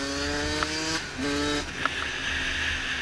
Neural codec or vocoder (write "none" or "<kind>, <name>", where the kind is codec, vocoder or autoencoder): none